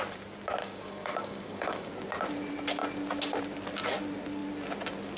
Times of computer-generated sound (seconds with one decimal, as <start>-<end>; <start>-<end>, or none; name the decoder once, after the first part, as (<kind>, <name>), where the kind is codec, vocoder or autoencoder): 0.6-1.9 (codec, DAC)

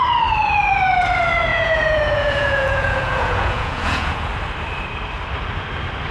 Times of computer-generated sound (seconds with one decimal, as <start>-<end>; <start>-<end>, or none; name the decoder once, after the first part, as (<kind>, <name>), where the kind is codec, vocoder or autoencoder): 1.5-4.3 (vocoder, Vocos)

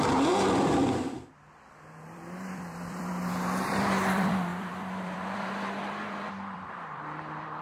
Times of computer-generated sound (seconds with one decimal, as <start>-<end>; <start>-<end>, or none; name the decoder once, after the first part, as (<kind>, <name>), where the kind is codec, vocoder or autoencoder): 0.0-3.1 (vocoder, BigVGAN v2); 3.7-7.6

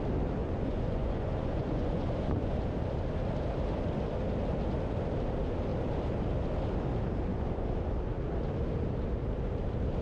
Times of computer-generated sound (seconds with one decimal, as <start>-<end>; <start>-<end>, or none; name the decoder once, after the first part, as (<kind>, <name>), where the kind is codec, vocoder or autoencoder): 0.4-2.6 (vocoder, Vocos); 7.3-8.0

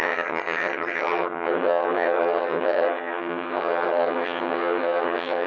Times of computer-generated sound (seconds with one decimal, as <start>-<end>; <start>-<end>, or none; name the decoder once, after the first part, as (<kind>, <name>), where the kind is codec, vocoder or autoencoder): 0.0-5.5 (vocoder, HiFi-GAN)